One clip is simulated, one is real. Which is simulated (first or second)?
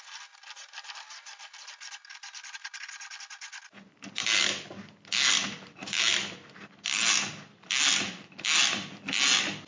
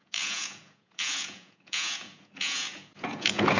second